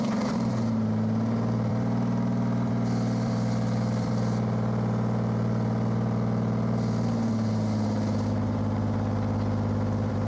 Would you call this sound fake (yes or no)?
yes